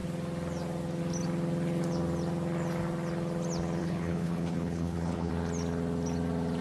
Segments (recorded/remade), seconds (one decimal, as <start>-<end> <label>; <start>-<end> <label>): 0.0-3.8 recorded; 3.8-5.3 remade; 5.3-6.6 recorded